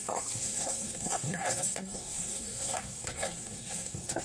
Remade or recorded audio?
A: remade